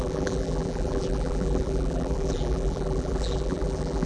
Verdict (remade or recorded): remade